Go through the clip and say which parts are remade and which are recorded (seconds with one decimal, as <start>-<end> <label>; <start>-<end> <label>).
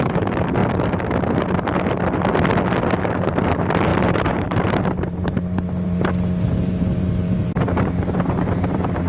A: 0.0-0.6 remade; 0.6-3.0 recorded; 3.0-9.1 remade